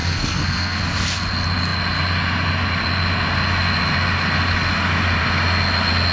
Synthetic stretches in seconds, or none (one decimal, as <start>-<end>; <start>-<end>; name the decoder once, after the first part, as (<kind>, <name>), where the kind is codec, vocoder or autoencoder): 0.0-0.8 (codec, SNAC)